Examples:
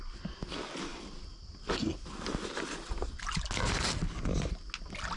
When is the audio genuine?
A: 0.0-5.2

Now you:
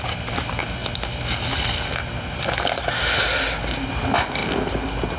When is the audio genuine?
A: 0.0-5.2

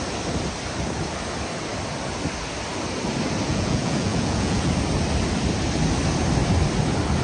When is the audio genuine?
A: 0.0-3.5; 4.7-7.2

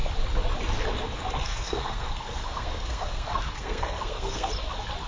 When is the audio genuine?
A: 0.0-1.4; 4.5-5.1

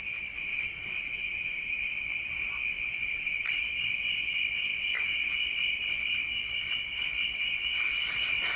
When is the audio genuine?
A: 0.0-0.5; 1.9-3.0; 3.6-8.6

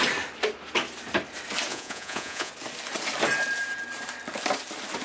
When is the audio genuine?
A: 0.0-1.7; 2.5-5.0

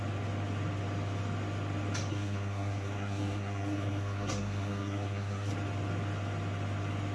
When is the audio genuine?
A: 0.0-2.1; 5.5-7.1